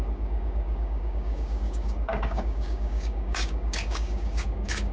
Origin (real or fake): fake